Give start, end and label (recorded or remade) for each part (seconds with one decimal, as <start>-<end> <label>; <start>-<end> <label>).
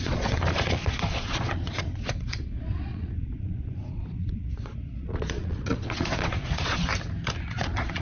0.0-6.9 remade; 6.9-7.5 recorded; 7.5-8.0 remade